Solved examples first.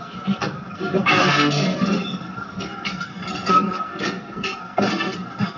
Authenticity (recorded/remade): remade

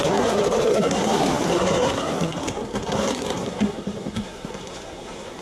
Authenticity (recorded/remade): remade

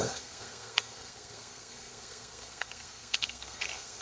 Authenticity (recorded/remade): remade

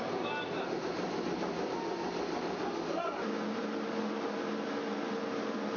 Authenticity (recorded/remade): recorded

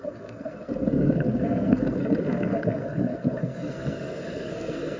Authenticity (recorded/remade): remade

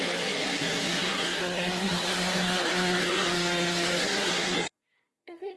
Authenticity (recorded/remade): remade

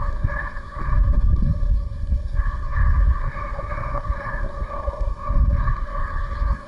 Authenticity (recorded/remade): remade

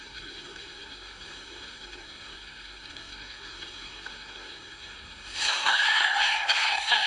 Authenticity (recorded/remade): remade